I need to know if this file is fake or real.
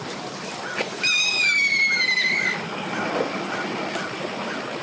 real